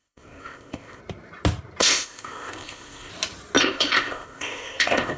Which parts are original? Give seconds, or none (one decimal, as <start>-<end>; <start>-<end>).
1.0-1.8; 3.1-3.6